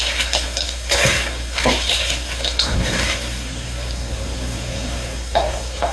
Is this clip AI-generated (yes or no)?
yes